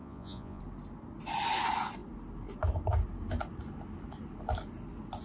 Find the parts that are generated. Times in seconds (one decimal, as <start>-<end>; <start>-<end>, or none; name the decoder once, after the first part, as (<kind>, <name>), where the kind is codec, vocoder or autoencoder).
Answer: 0.0-0.6 (vocoder, Vocos)